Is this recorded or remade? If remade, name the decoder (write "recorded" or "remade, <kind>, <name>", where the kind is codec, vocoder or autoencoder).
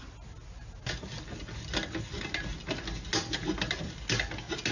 recorded